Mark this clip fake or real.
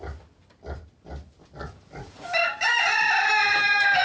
real